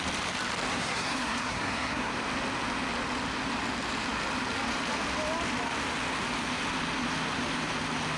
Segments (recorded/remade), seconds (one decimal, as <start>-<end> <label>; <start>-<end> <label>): 0.0-0.7 recorded; 0.7-2.1 remade; 2.1-8.2 recorded